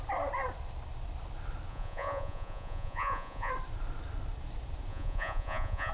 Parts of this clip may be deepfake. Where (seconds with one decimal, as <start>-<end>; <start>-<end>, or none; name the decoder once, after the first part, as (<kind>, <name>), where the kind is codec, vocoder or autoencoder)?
1.7-3.5 (vocoder, Vocos); 4.9-5.9